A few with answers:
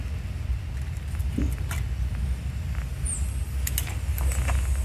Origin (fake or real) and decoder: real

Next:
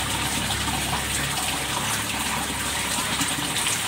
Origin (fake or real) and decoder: real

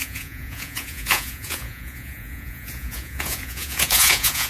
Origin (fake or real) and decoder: fake, vocoder, Vocos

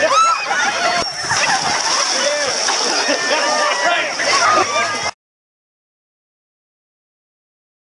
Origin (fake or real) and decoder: real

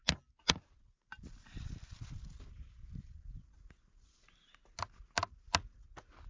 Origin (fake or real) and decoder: real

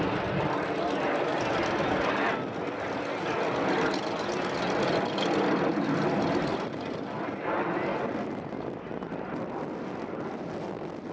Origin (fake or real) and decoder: real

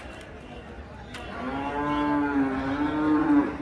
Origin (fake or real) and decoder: real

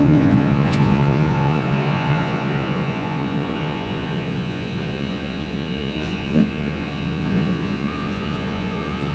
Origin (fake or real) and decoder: fake, vocoder, Vocos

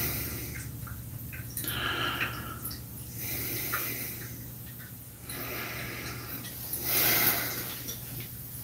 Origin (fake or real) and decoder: real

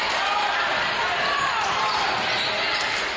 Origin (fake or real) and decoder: real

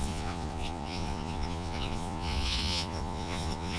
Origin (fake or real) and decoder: fake, vocoder, Vocos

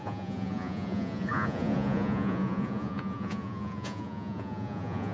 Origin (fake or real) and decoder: fake, vocoder, Vocos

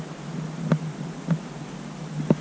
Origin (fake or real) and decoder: real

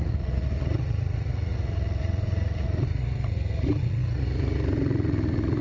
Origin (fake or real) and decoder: fake, vocoder, Vocos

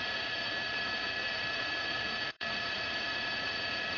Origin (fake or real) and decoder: fake, vocoder, Vocos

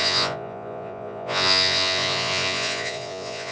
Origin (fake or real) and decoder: fake, vocoder, Vocos